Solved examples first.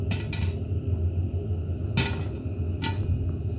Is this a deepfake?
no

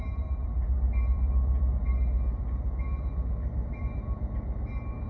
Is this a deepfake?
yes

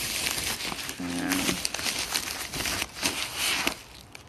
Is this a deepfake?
no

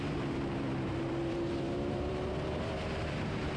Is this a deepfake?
yes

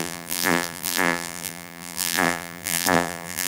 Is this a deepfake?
yes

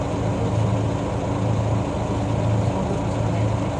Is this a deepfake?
no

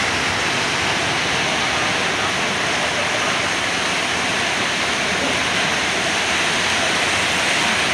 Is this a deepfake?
no